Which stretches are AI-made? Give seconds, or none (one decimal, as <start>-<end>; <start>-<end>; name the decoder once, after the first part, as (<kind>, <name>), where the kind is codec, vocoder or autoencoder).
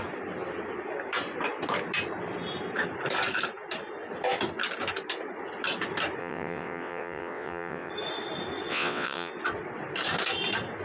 6.2-7.9 (vocoder, WaveNeXt); 8.7-9.3